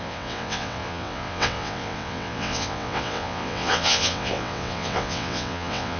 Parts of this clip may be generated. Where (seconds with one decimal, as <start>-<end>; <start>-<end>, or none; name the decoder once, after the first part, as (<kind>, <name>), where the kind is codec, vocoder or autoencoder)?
0.0-6.0 (vocoder, WaveNeXt)